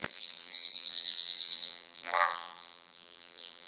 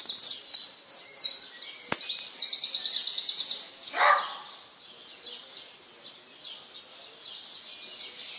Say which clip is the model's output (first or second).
first